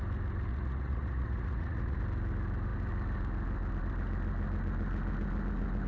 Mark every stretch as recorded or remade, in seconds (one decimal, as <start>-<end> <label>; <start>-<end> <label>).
0.0-0.5 recorded; 0.5-2.0 remade; 2.0-5.9 recorded

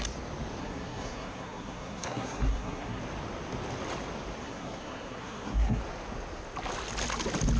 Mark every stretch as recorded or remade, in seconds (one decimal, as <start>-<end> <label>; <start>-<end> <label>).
0.0-0.6 recorded; 0.6-3.0 remade; 3.0-4.4 recorded; 4.4-5.8 remade; 5.8-7.6 recorded

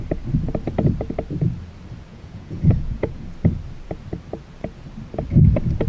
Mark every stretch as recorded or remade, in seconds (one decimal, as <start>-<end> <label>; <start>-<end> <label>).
0.0-2.1 recorded; 2.1-3.3 remade; 3.3-5.9 recorded

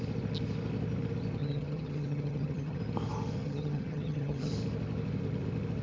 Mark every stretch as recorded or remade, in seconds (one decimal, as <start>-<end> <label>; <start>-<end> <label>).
0.0-1.4 recorded; 1.4-2.8 remade; 2.8-3.4 recorded; 3.4-4.5 remade; 4.5-5.8 recorded

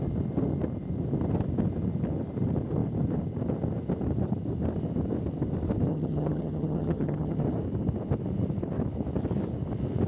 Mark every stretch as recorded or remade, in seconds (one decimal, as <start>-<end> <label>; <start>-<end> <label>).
0.0-5.9 recorded; 5.9-7.4 remade; 7.4-10.1 recorded

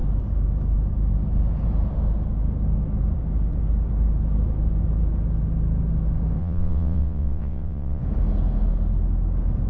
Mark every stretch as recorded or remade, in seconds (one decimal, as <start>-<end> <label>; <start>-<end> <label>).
0.0-6.4 recorded; 6.4-8.0 remade; 8.0-9.7 recorded

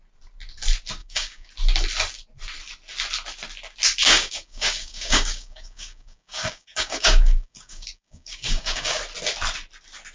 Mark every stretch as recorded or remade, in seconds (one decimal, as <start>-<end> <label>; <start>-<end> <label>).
0.0-1.0 recorded; 1.0-1.5 remade; 1.5-4.0 recorded; 4.0-9.0 remade; 9.0-10.1 recorded

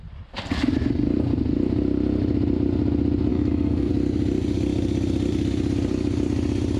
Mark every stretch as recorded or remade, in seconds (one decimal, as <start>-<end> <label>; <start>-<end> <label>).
0.0-3.3 recorded; 3.3-3.9 remade; 3.9-6.8 recorded